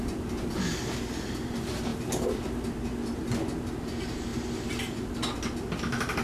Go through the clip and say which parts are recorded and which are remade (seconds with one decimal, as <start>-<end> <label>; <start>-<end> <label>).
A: 0.0-4.3 recorded; 4.3-5.1 remade; 5.1-6.2 recorded